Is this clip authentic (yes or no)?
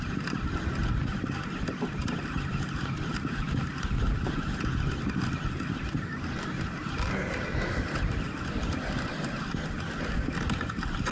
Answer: yes